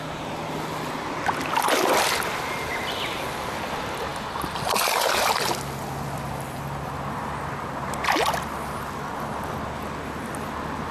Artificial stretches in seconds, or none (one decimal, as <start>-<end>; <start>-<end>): none